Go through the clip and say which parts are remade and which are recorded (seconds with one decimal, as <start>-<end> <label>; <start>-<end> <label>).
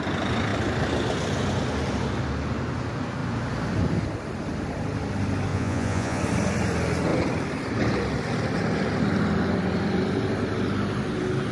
0.0-5.5 recorded; 5.5-6.2 remade; 6.2-11.5 recorded